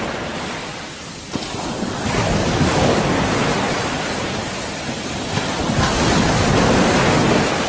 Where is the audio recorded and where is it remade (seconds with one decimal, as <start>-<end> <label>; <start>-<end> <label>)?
0.0-2.4 recorded; 2.4-3.0 remade; 3.0-7.7 recorded